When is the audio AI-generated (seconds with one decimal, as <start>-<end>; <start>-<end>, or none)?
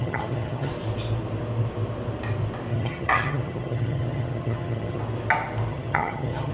0.0-0.7; 2.7-5.0; 5.7-6.5